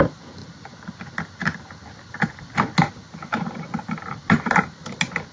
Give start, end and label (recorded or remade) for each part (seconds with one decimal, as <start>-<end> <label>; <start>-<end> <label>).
0.0-5.3 recorded

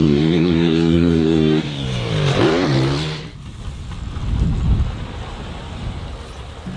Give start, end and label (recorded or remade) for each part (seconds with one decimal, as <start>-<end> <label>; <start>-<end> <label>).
0.0-2.1 remade; 2.1-6.8 recorded

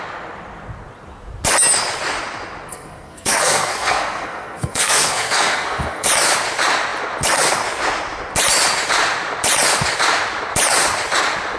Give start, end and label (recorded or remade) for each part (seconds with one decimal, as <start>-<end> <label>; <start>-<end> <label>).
0.0-2.7 recorded; 2.7-6.1 remade; 6.1-11.6 recorded

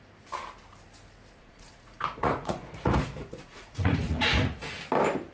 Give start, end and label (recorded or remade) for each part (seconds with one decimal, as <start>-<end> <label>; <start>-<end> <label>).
0.0-1.4 recorded; 1.4-4.6 remade; 4.6-5.3 recorded

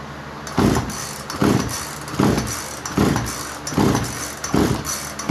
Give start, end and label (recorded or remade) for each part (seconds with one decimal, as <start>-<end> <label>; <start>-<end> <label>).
0.0-5.3 recorded

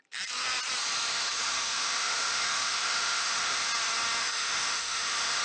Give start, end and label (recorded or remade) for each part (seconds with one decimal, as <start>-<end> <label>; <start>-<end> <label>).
0.0-1.1 recorded; 1.1-3.7 remade; 3.7-4.2 recorded; 4.2-5.4 remade

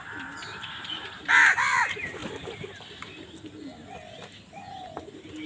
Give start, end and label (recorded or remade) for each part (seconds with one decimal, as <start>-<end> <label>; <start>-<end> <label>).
0.0-2.2 remade; 2.2-5.1 recorded; 5.1-5.5 remade

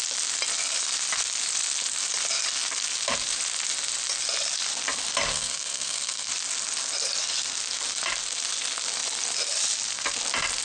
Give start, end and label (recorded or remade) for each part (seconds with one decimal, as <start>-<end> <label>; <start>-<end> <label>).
0.0-5.3 recorded; 5.3-6.3 remade; 6.3-10.6 recorded